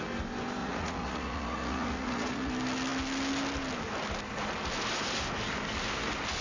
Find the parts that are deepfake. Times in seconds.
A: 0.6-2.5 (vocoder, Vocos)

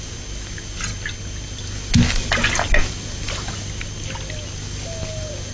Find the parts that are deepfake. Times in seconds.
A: none

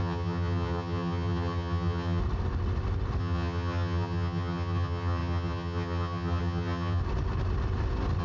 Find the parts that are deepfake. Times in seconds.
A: 0.0-2.2 (vocoder, HiFi-GAN); 3.2-7.0